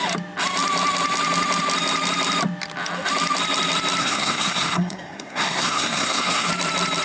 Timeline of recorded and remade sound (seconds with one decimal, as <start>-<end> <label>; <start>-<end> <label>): 0.0-4.0 recorded; 4.0-6.5 remade; 6.5-7.0 recorded